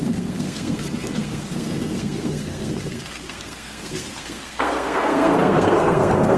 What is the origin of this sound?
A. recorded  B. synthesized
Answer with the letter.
B